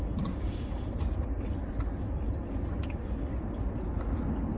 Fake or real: real